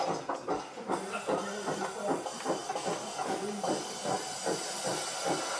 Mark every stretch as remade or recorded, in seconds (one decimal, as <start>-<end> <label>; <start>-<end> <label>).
0.0-5.6 recorded